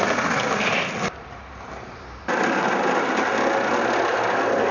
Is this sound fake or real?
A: real